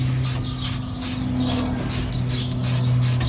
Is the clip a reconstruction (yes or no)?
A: no